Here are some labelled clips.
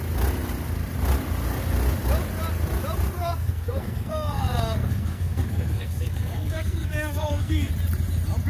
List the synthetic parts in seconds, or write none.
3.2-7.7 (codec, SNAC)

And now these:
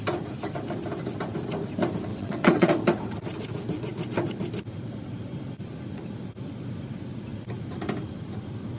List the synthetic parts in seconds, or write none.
2.1-2.7 (vocoder, WaveNeXt)

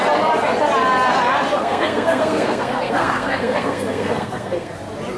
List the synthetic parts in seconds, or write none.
1.6-4.7 (codec, SNAC)

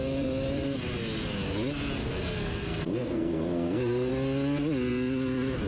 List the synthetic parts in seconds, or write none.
2.0-4.1 (codec, SNAC)

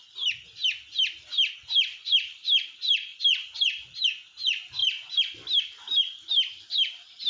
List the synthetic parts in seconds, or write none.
1.9-2.6 (vocoder, BigVGAN v2)